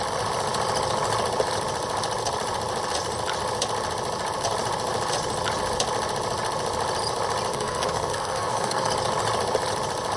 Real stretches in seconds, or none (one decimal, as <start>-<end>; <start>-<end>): 0.0-7.5; 8.9-10.2